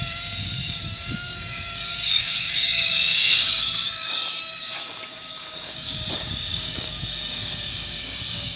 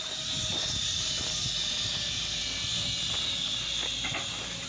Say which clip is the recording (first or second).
second